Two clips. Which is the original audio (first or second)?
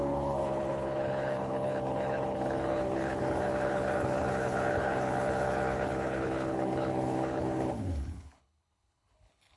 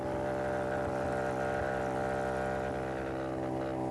second